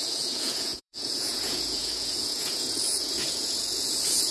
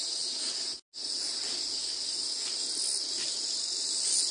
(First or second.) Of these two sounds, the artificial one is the first